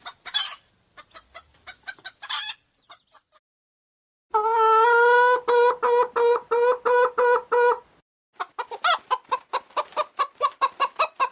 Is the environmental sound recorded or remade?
recorded